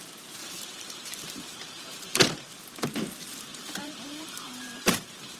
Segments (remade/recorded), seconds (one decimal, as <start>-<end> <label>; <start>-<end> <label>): 0.0-0.4 recorded; 0.4-2.4 remade; 2.4-3.5 recorded; 3.5-4.5 remade; 4.5-5.4 recorded